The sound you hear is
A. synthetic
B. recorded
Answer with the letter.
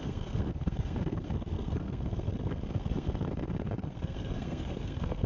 A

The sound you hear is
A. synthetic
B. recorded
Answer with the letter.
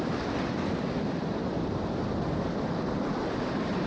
B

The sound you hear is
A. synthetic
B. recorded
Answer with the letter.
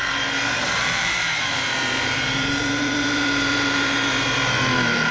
A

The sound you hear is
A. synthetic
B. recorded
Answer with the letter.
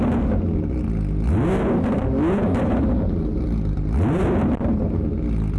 B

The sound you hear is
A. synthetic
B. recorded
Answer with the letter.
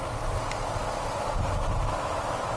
B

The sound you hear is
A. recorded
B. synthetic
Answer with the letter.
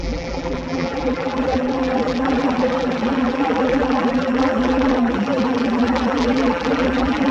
B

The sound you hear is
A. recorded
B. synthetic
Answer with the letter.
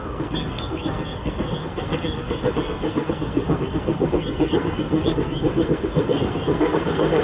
B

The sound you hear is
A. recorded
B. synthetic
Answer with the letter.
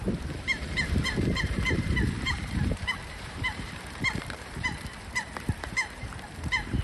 B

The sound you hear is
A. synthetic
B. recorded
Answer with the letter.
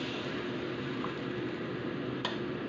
B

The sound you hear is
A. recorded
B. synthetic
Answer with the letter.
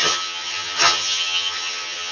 B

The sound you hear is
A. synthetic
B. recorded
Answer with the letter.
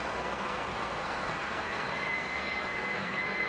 A